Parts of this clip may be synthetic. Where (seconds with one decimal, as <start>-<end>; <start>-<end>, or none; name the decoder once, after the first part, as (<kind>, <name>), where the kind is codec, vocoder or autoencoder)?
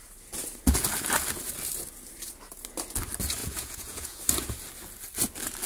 3.4-4.2 (vocoder, Vocos)